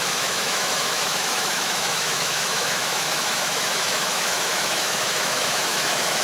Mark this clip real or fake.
fake